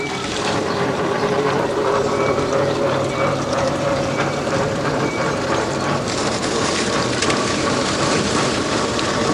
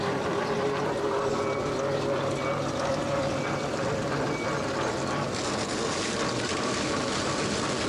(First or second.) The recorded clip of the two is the second